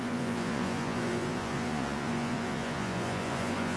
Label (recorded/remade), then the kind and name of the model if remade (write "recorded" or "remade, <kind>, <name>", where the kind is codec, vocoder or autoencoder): remade, vocoder, Vocos